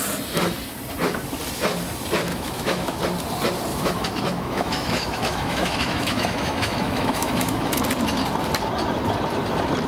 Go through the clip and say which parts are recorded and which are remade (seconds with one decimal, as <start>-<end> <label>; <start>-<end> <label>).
0.0-2.3 recorded; 2.3-3.0 remade; 3.0-3.7 recorded; 3.7-7.8 remade; 7.8-9.9 recorded